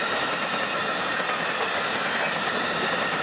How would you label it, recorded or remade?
recorded